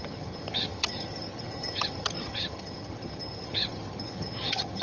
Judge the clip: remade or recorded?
remade